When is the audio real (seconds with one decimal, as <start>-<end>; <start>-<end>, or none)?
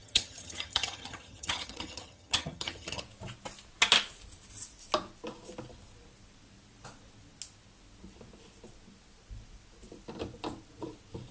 3.0-11.3